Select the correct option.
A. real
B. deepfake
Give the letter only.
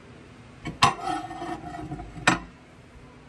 A